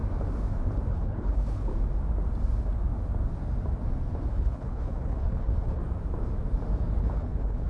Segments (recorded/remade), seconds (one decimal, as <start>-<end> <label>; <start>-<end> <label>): 0.0-0.9 recorded; 0.9-1.7 remade; 1.7-4.3 recorded; 4.3-5.8 remade; 5.8-7.0 recorded; 7.0-7.7 remade